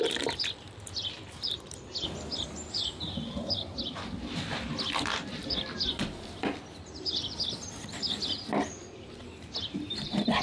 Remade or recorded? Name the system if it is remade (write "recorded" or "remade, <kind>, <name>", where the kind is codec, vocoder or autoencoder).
remade, vocoder, BigVGAN v2